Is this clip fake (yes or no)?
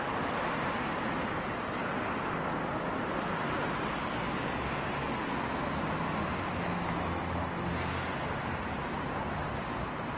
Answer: no